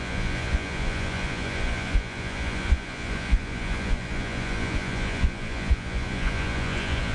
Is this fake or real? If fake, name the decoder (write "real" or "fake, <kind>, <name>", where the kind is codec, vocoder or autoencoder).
fake, vocoder, Vocos